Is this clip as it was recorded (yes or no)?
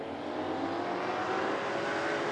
yes